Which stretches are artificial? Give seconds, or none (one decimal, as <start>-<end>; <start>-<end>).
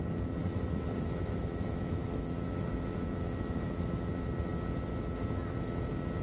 0.4-4.1